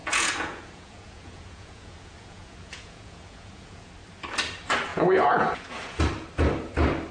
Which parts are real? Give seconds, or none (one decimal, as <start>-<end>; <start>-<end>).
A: 3.9-4.9; 6.0-7.1